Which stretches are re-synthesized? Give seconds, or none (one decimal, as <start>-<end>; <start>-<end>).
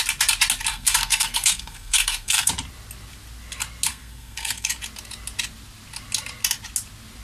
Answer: 0.7-2.5; 3.9-4.7